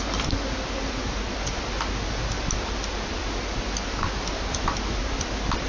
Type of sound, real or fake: real